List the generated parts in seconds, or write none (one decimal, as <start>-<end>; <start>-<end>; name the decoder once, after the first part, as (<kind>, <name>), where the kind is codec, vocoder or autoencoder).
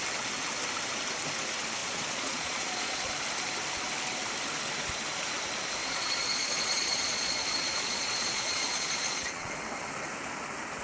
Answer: 1.8-3.1 (vocoder, Vocos); 5.8-9.5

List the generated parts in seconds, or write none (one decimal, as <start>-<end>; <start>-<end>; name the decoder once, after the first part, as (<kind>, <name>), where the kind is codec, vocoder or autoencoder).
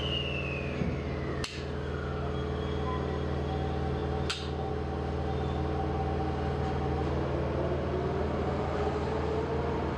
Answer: none